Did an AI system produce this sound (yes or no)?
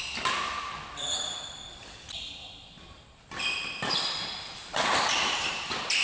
yes